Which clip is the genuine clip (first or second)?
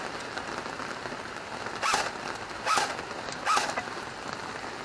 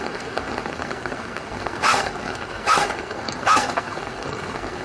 first